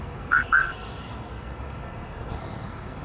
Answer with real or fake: fake